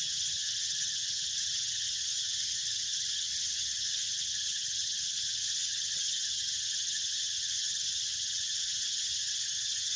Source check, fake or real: fake